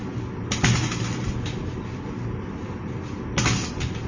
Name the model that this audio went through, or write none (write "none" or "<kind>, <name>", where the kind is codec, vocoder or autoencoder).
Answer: none